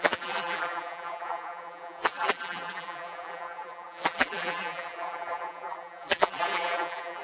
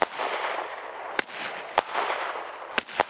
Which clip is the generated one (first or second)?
first